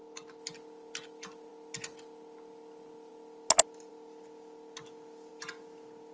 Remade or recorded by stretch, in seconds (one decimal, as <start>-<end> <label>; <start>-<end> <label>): 0.0-6.1 recorded